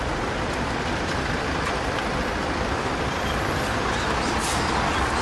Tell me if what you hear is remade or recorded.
remade